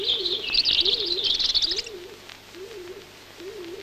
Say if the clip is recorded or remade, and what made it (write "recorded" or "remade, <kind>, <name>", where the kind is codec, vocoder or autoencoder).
recorded